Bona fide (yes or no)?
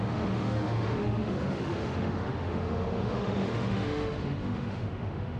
no